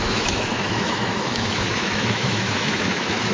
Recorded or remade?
remade